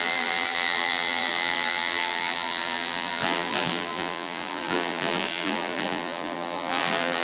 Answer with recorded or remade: remade